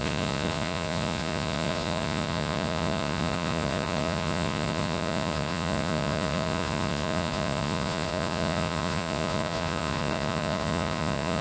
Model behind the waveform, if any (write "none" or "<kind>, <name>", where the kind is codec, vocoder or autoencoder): vocoder, Vocos